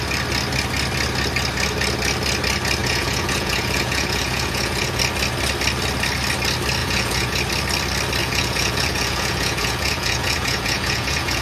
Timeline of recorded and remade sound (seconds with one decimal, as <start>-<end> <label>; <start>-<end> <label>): 0.0-2.8 recorded; 2.8-5.0 remade; 5.0-6.8 recorded; 6.8-7.4 remade; 7.4-8.2 recorded; 8.2-11.4 remade